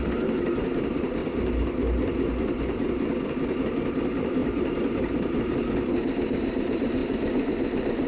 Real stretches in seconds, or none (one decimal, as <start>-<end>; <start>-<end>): 1.2-3.6; 7.0-8.1